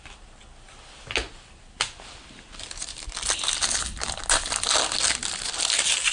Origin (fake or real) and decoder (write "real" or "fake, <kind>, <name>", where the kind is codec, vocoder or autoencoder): real